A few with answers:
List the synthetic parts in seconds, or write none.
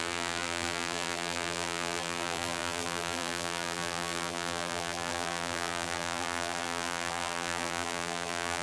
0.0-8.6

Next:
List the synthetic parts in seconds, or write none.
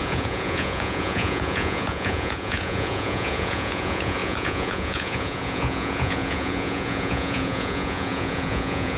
0.0-9.0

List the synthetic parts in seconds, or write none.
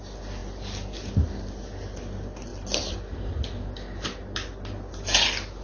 none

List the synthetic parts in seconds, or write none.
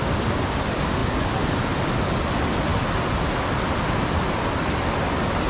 none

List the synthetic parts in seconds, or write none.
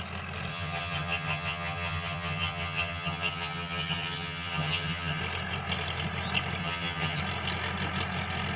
0.5-5.2; 6.6-7.2